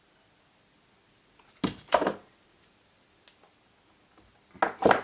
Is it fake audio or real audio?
real